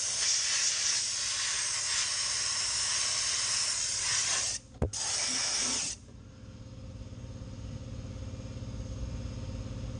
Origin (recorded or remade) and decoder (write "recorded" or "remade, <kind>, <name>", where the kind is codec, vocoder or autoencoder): recorded